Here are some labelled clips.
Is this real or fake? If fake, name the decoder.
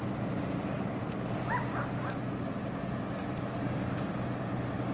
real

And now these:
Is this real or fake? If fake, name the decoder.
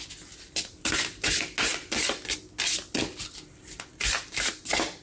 real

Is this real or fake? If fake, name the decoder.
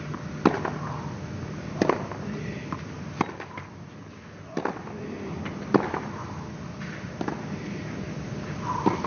real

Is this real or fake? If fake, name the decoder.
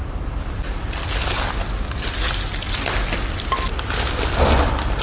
real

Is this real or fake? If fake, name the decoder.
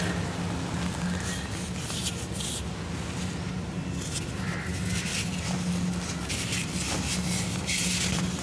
real